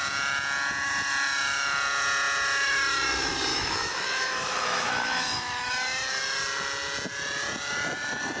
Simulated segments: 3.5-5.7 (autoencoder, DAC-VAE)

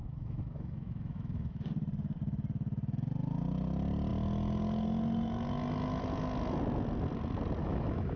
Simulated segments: 0.0-1.7 (autoencoder, DAC-VAE); 7.6-8.2

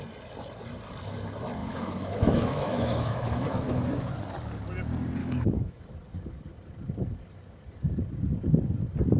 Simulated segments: 1.6-3.8 (autoencoder, DAC-VAE); 5.2-5.8